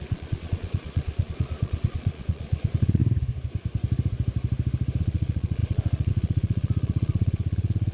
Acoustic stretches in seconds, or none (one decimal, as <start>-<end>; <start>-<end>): 3.0-5.0